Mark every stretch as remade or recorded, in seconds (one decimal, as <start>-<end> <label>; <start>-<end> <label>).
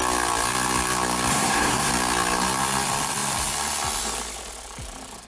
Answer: 0.0-1.3 recorded; 1.3-1.9 remade; 1.9-5.3 recorded